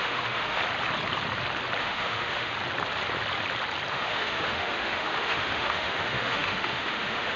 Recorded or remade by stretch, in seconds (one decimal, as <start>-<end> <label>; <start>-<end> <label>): 0.0-0.6 remade; 0.6-1.8 recorded; 1.8-2.5 remade; 2.5-3.9 recorded; 3.9-7.4 remade